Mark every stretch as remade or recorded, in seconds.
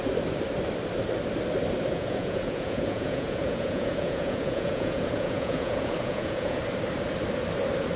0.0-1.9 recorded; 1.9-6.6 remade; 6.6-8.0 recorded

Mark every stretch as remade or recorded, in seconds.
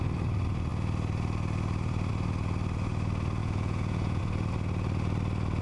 0.0-3.4 recorded; 3.4-4.2 remade; 4.2-5.6 recorded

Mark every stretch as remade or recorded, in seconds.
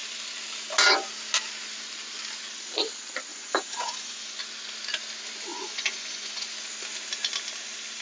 0.0-3.3 recorded; 3.3-4.4 remade; 4.4-5.5 recorded; 5.5-6.5 remade; 6.5-8.0 recorded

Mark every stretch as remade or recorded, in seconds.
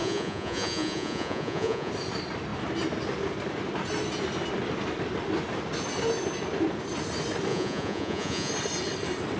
0.0-1.9 remade; 1.9-7.5 recorded; 7.5-8.5 remade; 8.5-9.4 recorded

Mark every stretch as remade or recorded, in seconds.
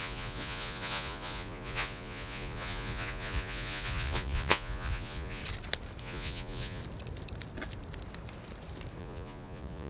0.0-5.4 remade; 5.4-6.0 recorded; 6.0-6.8 remade; 6.8-9.0 recorded; 9.0-9.9 remade